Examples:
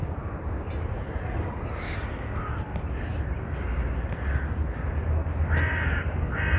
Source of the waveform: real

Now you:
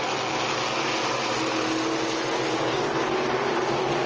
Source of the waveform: real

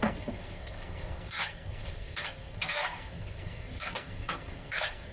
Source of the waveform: fake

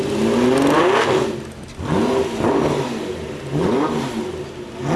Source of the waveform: real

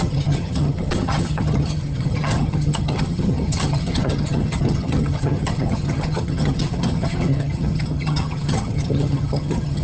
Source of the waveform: fake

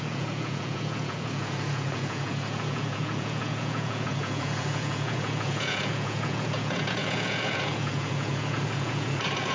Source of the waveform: fake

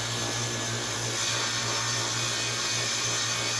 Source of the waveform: real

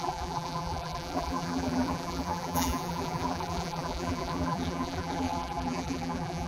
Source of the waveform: fake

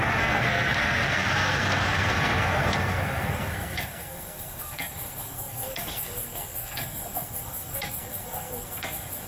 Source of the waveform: fake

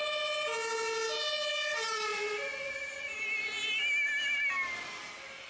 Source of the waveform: real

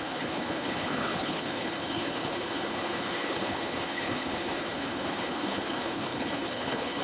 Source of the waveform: fake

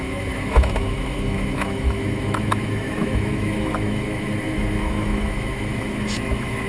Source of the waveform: fake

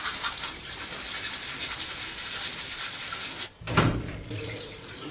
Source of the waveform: fake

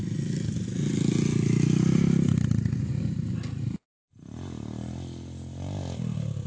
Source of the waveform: real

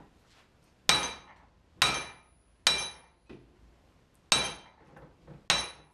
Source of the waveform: real